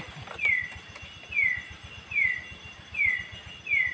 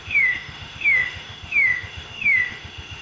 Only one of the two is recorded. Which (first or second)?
first